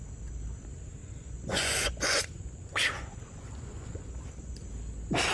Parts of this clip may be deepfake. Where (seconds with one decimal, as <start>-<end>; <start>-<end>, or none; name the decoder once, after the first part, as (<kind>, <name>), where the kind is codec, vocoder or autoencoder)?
1.0-4.2 (vocoder, Vocos)